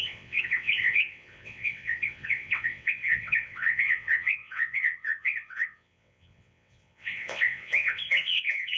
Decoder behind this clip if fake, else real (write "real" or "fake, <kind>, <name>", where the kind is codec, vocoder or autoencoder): fake, vocoder, WaveNeXt